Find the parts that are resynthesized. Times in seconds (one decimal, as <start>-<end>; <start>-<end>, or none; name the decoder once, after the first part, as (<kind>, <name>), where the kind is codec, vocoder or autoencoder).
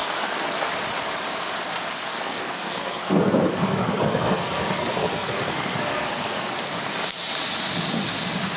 0.0-0.7 (codec, SNAC); 2.0-6.5